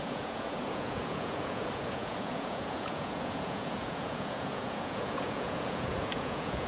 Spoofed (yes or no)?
yes